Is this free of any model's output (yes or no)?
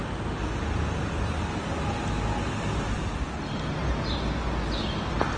yes